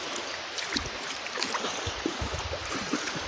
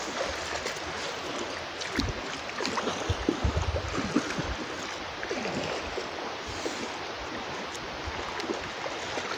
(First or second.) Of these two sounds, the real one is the second